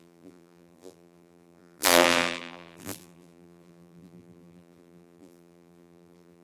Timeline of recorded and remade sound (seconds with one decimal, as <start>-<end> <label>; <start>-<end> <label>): 0.0-6.4 remade